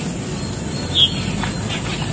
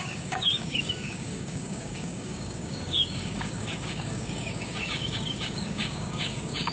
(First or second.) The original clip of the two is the first